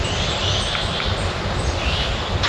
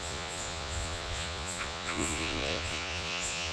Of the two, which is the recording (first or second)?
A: first